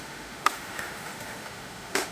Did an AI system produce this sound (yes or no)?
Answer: yes